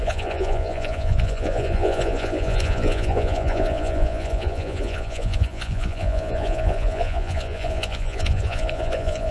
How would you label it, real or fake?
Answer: fake